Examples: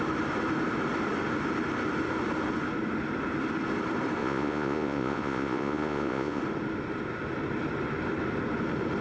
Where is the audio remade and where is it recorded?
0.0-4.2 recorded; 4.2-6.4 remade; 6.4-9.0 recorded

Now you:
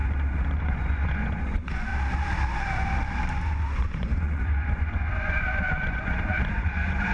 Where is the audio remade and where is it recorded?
0.0-0.6 recorded; 0.6-1.9 remade; 1.9-3.3 recorded; 3.3-7.1 remade